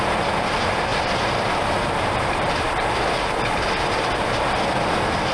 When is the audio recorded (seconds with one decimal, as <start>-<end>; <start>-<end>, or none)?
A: none